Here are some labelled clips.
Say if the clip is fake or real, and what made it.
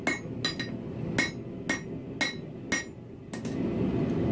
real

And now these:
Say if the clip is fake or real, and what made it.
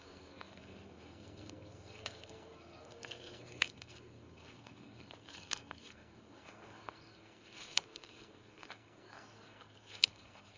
fake, codec, SNAC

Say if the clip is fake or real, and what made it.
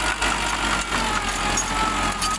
real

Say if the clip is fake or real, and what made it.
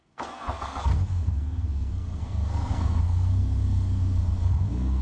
fake, codec, SNAC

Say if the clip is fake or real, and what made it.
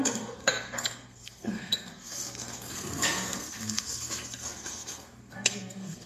fake, codec, SNAC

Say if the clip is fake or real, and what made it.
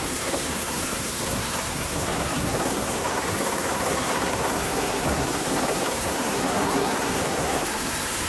fake, codec, SNAC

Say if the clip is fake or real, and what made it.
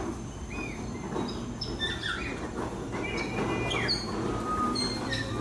real